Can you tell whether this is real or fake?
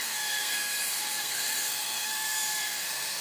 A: fake